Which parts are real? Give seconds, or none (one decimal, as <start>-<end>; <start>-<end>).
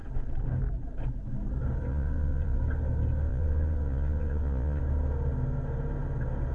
0.0-1.9; 2.6-3.3; 4.8-6.5